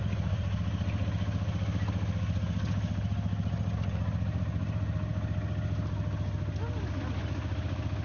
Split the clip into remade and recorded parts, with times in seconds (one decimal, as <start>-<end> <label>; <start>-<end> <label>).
0.0-8.0 recorded